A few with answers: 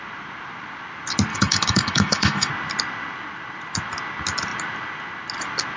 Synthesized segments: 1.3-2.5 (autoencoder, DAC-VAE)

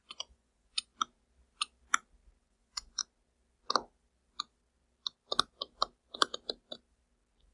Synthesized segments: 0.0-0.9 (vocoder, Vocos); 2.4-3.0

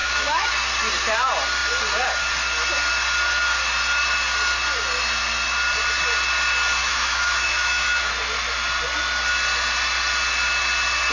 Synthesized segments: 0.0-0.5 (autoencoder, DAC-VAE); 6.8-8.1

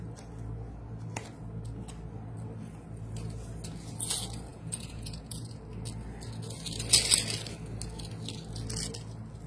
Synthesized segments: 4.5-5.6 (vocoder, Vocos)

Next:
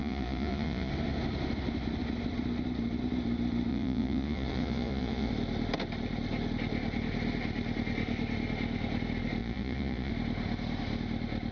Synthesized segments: 0.0-0.9 (vocoder, Vocos); 3.7-5.3; 9.4-10.1

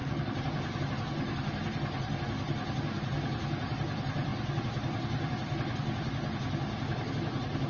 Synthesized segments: 0.0-0.8 (vocoder, BigVGAN v2)

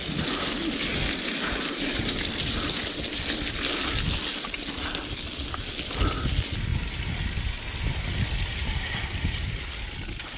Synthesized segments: none

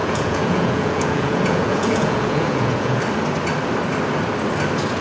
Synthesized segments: 0.0-3.0 (vocoder, Vocos)